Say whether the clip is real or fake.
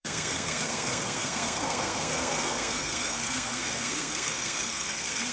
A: fake